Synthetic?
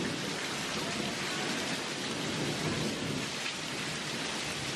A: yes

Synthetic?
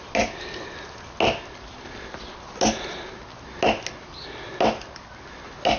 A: no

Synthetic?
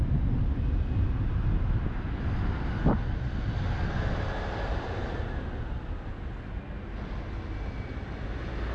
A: no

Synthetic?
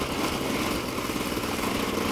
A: no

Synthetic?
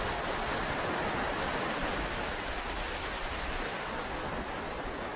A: no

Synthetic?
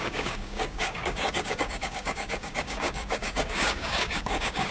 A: yes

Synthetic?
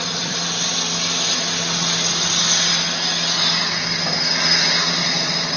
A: no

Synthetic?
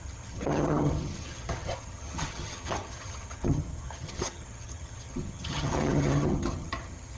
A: yes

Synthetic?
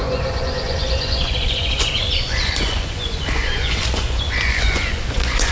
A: yes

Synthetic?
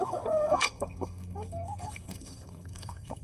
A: yes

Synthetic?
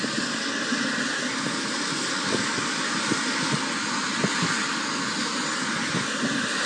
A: no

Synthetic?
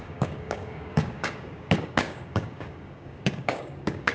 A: yes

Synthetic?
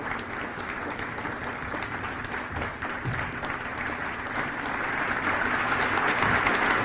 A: no